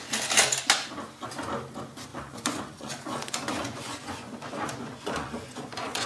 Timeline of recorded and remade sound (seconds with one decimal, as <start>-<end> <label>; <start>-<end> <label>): 0.0-2.1 recorded; 2.1-6.1 remade